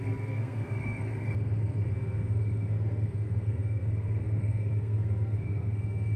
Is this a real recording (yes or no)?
no